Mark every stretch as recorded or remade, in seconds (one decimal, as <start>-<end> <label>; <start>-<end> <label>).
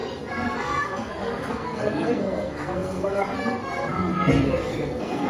0.0-5.3 remade